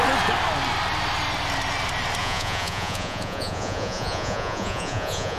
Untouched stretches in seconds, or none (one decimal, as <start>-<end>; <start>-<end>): 0.0-2.2